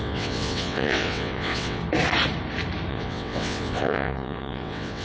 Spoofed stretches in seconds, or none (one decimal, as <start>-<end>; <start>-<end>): 0.0-1.8; 2.9-5.0